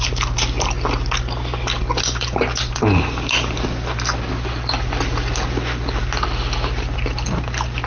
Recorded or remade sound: recorded